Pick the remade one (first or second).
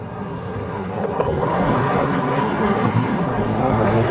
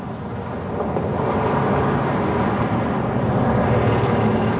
first